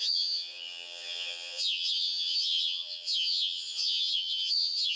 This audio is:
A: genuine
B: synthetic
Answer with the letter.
B